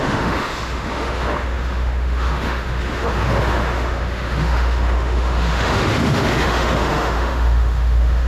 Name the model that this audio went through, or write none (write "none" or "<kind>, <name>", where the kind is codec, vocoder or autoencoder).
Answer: autoencoder, DAC-VAE